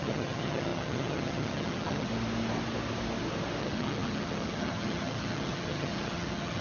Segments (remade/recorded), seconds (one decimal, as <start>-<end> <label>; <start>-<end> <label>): 0.0-2.1 remade; 2.1-3.6 recorded; 3.6-6.6 remade